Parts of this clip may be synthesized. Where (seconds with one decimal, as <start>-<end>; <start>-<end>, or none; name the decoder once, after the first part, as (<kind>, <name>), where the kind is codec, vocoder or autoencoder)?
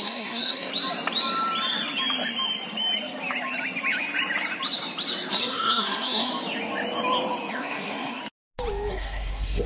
0.0-0.7 (codec, SNAC); 5.3-6.3; 7.5-8.2; 8.9-9.7